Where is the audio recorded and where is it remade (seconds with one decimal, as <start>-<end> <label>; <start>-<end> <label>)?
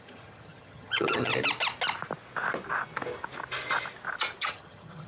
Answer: 0.0-1.3 remade; 1.3-4.4 recorded; 4.4-5.1 remade